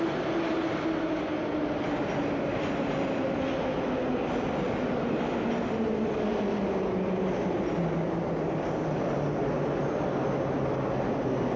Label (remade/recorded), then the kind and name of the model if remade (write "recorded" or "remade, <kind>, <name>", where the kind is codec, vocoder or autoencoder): recorded